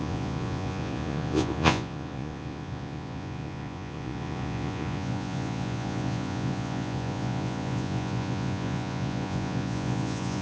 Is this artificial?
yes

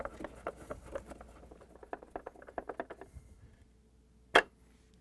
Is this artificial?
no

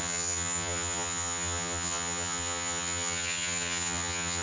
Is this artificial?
yes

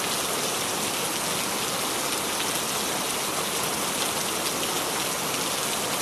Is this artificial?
no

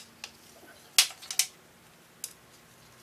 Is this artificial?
no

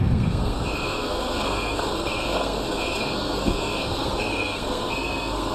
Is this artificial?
yes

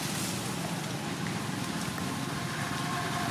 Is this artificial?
no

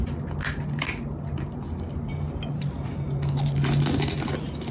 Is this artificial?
no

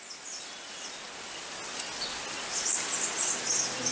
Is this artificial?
no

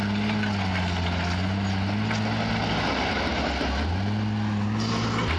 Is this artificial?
no